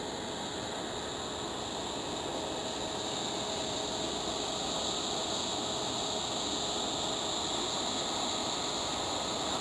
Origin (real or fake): real